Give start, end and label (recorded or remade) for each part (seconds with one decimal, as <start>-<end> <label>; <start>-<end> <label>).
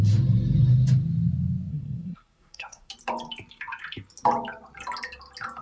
0.0-1.7 recorded; 1.7-2.9 remade; 2.9-5.6 recorded